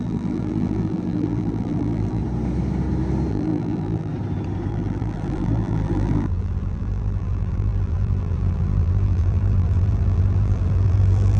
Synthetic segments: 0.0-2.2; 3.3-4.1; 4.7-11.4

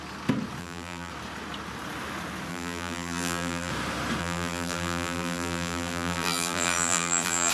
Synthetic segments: 0.6-1.1; 2.5-3.7; 4.2-7.5